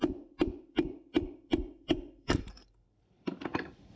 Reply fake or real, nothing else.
fake